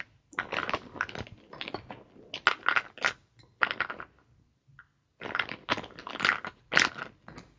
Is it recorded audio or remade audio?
recorded